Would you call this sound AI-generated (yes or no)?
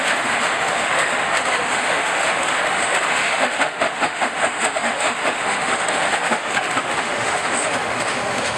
yes